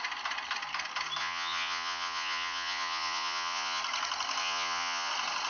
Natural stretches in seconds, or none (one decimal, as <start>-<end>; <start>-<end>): 0.0-1.2; 3.8-4.4; 5.1-5.5

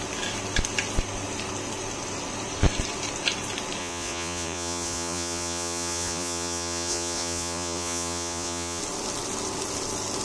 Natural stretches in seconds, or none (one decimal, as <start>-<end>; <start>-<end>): 0.0-3.8; 8.8-10.2

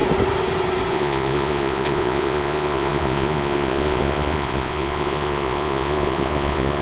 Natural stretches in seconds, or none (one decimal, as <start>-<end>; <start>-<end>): 0.0-0.9

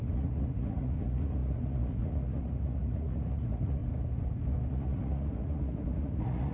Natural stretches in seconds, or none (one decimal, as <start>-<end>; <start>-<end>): 3.8-4.7